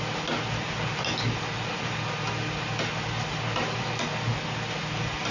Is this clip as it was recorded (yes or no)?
yes